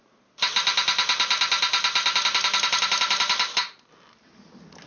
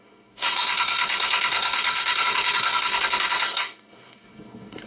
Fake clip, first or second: second